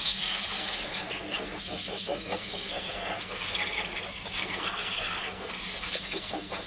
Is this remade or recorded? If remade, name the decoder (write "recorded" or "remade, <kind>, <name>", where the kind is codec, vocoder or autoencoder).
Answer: remade, codec, SNAC